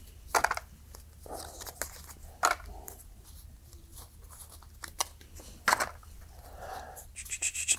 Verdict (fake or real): real